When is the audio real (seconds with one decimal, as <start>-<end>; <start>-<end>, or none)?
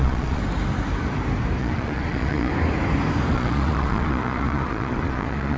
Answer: 0.4-1.6; 2.5-3.3